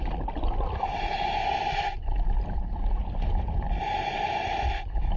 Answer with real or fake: real